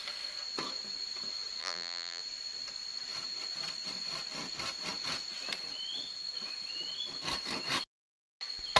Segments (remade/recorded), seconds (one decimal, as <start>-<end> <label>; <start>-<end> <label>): 0.0-1.6 recorded; 1.6-2.2 remade; 2.2-8.8 recorded